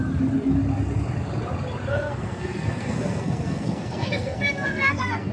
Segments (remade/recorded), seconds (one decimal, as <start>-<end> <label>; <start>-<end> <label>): 0.0-1.9 recorded; 1.9-5.3 remade